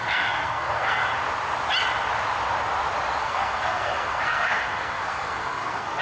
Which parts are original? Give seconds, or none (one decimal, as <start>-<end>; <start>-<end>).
1.0-3.2